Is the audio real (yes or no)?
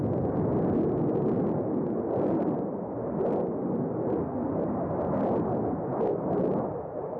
yes